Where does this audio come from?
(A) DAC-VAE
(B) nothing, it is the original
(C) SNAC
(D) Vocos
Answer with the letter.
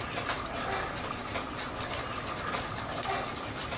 B